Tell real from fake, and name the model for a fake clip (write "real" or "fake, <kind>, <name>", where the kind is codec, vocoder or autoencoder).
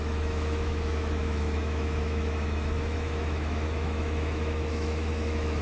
fake, autoencoder, DAC-VAE